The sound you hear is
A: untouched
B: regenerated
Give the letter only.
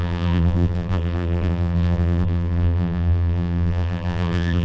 B